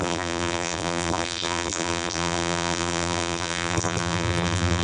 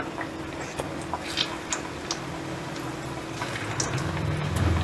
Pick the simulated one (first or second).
first